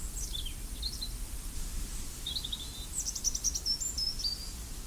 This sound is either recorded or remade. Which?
recorded